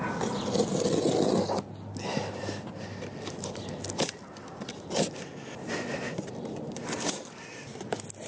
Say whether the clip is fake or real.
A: real